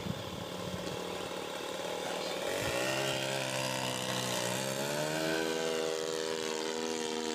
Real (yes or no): yes